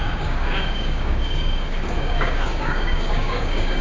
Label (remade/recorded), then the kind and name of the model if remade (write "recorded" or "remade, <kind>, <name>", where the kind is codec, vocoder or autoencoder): remade, codec, DAC